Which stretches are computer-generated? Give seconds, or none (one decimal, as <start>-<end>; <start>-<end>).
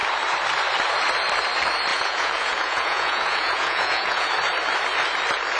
1.9-4.3